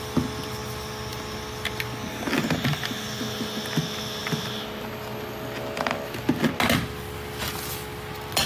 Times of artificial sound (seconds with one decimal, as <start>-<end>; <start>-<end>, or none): none